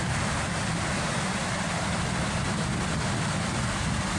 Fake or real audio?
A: real